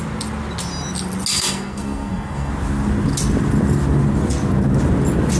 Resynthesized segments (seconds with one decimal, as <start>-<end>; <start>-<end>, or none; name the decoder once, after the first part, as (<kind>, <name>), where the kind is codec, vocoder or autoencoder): 1.3-2.5 (codec, SNAC)